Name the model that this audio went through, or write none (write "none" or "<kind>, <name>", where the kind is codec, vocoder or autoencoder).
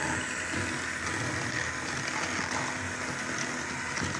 none